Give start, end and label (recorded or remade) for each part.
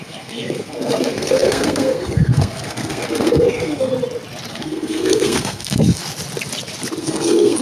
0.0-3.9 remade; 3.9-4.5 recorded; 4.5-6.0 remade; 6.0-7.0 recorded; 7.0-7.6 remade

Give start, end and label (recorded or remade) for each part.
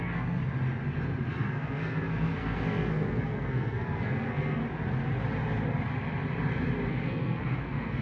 0.0-0.4 remade; 0.4-1.3 recorded; 1.3-4.6 remade; 4.6-6.9 recorded; 6.9-8.0 remade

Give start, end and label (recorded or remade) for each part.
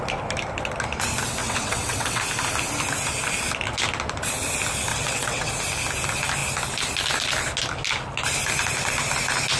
0.0-1.4 recorded; 1.4-2.2 remade; 2.2-4.9 recorded; 4.9-5.5 remade; 5.5-9.6 recorded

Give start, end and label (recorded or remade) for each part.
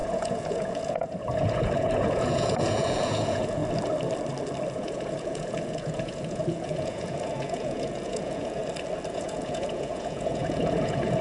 0.0-3.6 remade; 3.6-4.7 recorded; 4.7-8.6 remade; 8.6-9.1 recorded; 9.1-11.2 remade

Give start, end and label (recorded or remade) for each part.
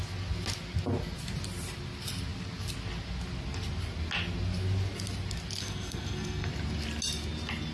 0.0-5.6 recorded; 5.6-6.5 remade; 6.5-7.7 recorded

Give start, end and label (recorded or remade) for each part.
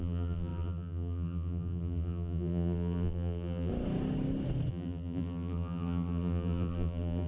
0.0-3.7 remade; 3.7-4.7 recorded; 4.7-7.3 remade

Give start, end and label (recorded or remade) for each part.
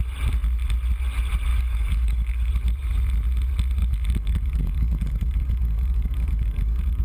0.0-1.5 recorded; 1.5-2.5 remade; 2.5-3.8 recorded; 3.8-7.0 remade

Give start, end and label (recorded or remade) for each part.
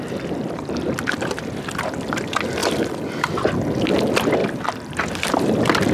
0.0-2.6 recorded; 2.6-3.2 remade; 3.2-5.9 recorded